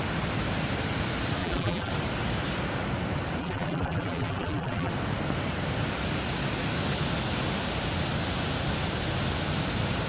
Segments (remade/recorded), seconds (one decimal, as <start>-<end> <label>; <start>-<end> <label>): 0.0-1.4 recorded; 1.4-1.9 remade; 1.9-3.4 recorded; 3.4-4.9 remade; 4.9-10.1 recorded